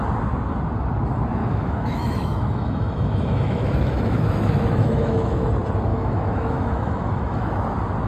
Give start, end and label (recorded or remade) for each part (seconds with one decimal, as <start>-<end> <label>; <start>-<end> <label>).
0.0-1.4 recorded; 1.4-5.5 remade; 5.5-5.9 recorded; 5.9-7.5 remade; 7.5-8.1 recorded